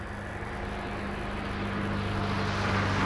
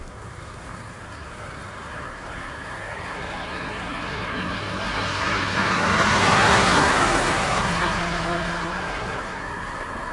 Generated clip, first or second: second